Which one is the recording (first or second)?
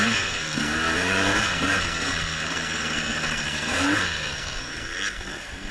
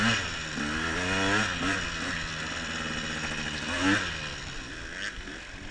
second